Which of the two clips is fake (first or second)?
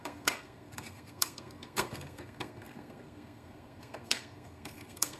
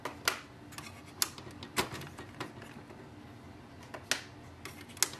first